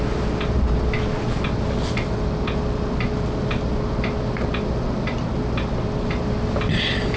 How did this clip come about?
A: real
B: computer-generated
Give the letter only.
A